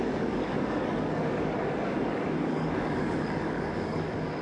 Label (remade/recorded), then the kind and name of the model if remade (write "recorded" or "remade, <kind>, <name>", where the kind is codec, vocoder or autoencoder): remade, codec, DAC